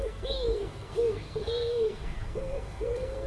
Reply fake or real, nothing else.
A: fake